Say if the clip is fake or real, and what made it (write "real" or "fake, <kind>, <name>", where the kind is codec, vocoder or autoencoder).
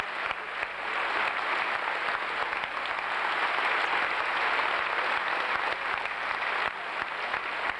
real